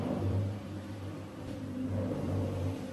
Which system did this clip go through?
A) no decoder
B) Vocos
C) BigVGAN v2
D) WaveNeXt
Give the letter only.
C